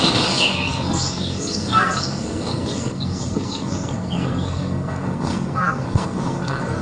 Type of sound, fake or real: fake